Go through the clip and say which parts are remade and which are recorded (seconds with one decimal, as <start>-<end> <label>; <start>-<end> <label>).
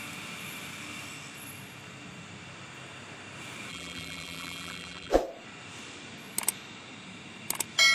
0.0-3.7 recorded; 3.7-5.1 remade; 5.1-7.9 recorded